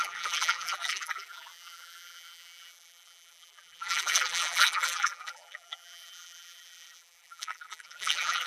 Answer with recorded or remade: remade